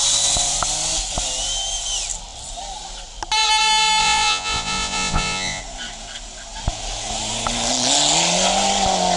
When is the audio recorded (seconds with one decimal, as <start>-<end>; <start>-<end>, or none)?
0.0-4.0; 5.6-9.2

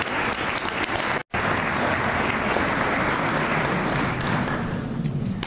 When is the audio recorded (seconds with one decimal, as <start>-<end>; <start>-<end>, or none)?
0.0-5.5

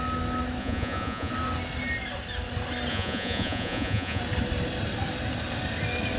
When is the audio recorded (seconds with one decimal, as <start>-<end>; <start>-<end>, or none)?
0.0-0.6; 1.3-2.9; 4.2-6.2